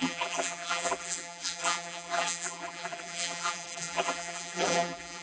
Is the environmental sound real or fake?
fake